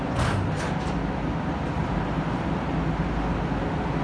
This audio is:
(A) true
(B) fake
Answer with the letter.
A